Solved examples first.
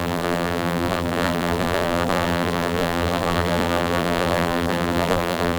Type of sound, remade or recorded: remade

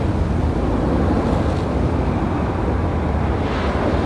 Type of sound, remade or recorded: recorded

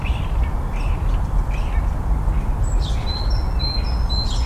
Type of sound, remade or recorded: recorded